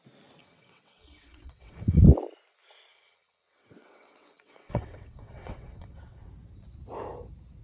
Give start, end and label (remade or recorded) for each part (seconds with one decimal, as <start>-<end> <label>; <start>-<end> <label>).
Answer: 0.0-0.4 recorded; 0.4-2.0 remade; 2.0-2.9 recorded; 2.9-6.3 remade; 6.3-7.6 recorded